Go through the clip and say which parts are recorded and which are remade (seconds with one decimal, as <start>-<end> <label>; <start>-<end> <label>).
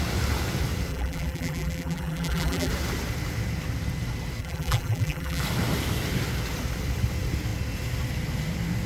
0.0-0.9 recorded; 0.9-2.7 remade; 2.7-4.4 recorded; 4.4-5.4 remade; 5.4-8.9 recorded